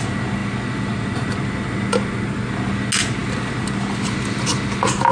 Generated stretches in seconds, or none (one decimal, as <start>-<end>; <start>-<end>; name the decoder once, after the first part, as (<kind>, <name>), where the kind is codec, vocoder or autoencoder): none